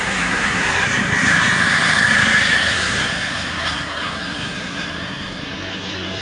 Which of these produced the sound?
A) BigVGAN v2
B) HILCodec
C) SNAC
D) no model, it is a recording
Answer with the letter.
C